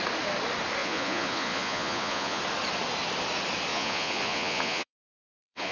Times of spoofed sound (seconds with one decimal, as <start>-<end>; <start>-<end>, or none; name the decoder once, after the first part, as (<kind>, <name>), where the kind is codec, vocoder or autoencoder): 0.8-2.4 (vocoder, Vocos); 3.7-5.7